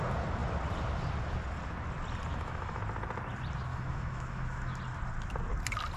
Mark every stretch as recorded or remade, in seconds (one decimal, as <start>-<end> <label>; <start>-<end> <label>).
0.0-2.3 recorded; 2.3-2.8 remade; 2.8-3.7 recorded; 3.7-4.8 remade; 4.8-6.0 recorded